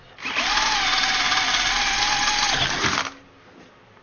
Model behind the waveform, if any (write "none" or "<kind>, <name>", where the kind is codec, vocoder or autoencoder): none